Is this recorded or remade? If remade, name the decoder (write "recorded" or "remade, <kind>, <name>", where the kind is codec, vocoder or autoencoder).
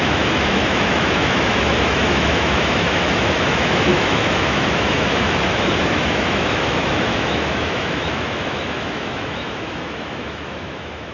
remade, autoencoder, DAC-VAE